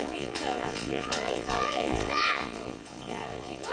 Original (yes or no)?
no